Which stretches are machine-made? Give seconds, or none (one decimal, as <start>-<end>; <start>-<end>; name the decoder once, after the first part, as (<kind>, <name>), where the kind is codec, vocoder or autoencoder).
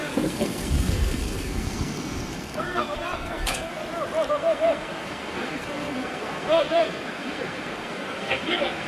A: 0.0-3.8 (codec, SNAC); 4.3-8.9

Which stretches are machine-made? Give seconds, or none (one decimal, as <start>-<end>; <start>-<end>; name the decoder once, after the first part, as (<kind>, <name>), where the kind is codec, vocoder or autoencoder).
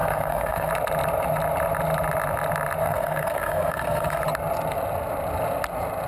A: 0.0-0.7 (codec, SNAC); 2.8-4.2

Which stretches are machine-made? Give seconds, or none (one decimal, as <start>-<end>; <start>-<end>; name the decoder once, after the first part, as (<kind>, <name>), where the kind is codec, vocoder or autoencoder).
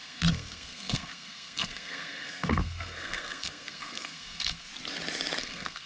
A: 0.0-4.7 (codec, SNAC); 5.4-5.9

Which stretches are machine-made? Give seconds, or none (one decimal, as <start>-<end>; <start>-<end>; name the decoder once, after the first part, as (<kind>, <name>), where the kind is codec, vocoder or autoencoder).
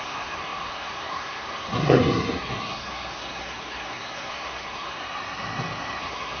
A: 0.0-5.0 (codec, SNAC); 6.0-6.4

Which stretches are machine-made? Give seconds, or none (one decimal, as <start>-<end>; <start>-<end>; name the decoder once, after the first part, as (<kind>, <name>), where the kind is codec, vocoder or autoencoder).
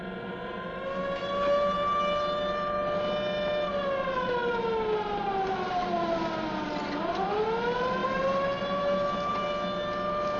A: none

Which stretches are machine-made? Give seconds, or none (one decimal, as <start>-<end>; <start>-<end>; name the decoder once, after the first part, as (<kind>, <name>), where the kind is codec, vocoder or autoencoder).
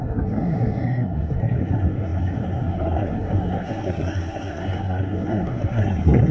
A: 0.0-6.3 (codec, SNAC)